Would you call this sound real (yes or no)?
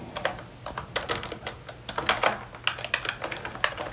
yes